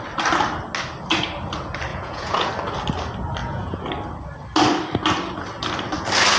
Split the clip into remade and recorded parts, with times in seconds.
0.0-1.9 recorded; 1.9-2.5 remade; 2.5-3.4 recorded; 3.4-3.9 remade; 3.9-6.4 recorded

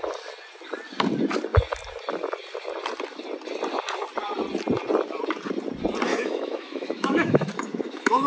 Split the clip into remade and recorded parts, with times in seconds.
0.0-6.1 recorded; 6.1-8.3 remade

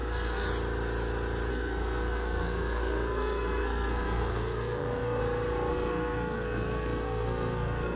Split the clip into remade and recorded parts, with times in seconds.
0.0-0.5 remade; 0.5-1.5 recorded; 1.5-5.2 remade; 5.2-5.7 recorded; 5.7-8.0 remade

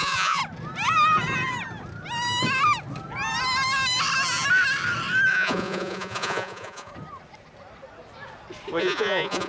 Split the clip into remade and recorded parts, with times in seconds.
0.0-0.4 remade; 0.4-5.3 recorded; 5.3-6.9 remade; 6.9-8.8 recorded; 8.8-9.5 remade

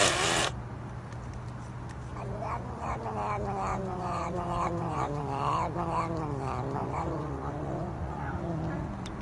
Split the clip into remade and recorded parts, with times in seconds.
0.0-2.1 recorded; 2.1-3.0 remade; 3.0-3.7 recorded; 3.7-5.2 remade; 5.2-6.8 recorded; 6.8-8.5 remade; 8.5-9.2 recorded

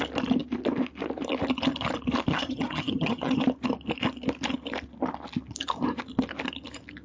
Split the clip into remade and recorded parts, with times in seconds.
0.0-2.3 recorded; 2.3-3.4 remade; 3.4-7.0 recorded

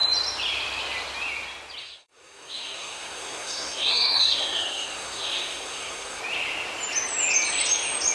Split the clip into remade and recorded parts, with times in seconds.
0.0-1.8 recorded; 1.8-6.2 remade; 6.2-8.1 recorded